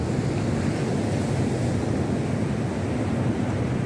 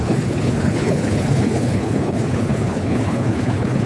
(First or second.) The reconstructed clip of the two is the second